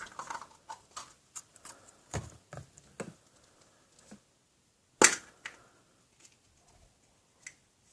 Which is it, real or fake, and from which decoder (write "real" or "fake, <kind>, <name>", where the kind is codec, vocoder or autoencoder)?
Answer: real